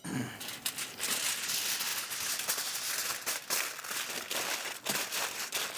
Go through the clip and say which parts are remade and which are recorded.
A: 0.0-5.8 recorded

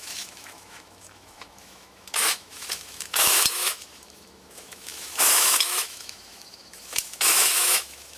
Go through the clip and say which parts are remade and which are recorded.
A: 0.0-8.2 remade

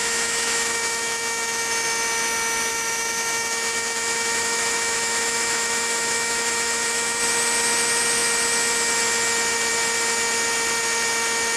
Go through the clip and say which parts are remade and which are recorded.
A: 0.0-1.7 remade; 1.7-2.7 recorded; 2.7-7.2 remade; 7.2-11.6 recorded

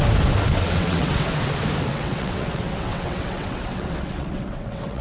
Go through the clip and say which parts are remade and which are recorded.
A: 0.0-0.5 recorded; 0.5-1.5 remade; 1.5-1.9 recorded; 1.9-5.0 remade

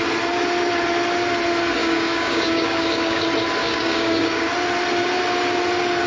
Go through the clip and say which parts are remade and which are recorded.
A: 0.0-1.8 recorded; 1.8-3.2 remade; 3.2-3.6 recorded; 3.6-4.5 remade; 4.5-6.1 recorded

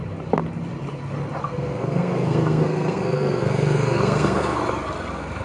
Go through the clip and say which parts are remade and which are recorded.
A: 0.0-1.4 recorded; 1.4-4.6 remade; 4.6-5.4 recorded

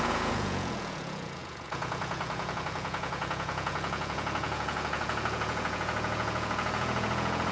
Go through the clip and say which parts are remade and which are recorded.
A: 0.0-7.5 remade

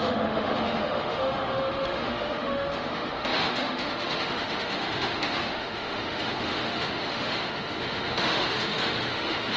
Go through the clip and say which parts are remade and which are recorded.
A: 0.0-9.6 remade